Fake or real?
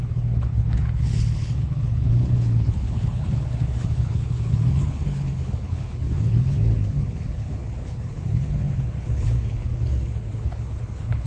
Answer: fake